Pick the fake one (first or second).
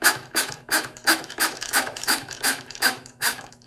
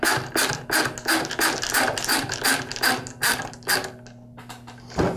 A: first